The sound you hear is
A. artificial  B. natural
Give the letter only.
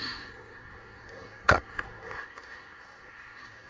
A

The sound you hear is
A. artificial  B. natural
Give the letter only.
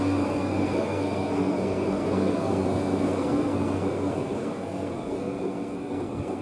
A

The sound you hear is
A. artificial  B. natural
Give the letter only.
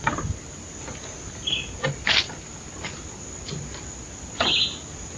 B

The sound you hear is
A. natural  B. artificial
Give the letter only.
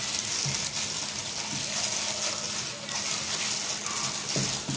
A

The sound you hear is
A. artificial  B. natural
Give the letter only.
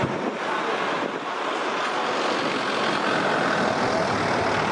B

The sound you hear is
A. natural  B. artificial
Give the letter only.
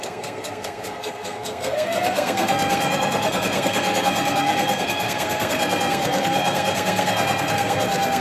B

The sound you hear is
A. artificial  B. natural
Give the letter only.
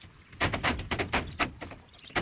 B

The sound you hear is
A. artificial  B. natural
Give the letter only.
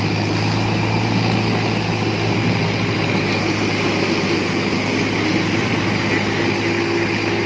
B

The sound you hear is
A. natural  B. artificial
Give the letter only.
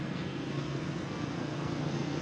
B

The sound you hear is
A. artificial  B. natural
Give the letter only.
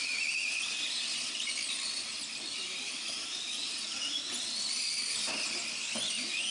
B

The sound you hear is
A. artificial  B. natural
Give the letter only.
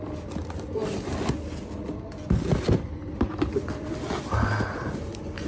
B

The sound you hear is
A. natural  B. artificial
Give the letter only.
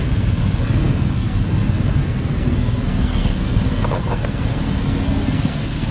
B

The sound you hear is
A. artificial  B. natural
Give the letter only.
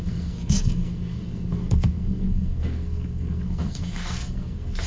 A